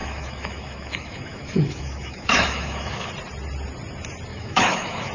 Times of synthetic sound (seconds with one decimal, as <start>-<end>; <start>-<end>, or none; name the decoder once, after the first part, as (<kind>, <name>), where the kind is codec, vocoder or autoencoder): 0.0-3.1 (autoencoder, DAC-VAE); 4.3-5.1